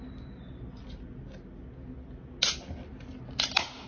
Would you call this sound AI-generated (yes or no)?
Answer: no